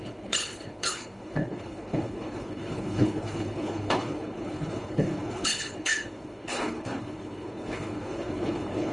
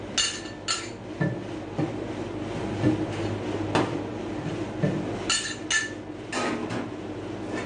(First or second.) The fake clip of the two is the first